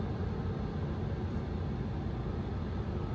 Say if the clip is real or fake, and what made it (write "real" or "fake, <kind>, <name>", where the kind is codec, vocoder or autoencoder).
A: real